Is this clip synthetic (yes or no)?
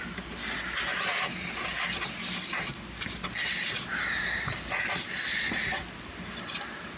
no